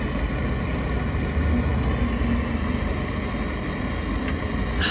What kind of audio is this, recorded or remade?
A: recorded